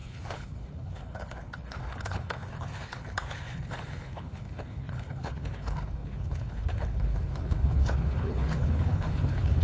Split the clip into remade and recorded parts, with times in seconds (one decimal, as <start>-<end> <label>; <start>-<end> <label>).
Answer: 0.0-9.6 remade